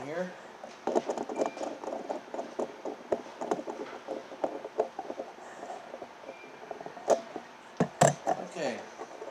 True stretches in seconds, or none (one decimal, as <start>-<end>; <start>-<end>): 0.0-3.3; 3.8-9.3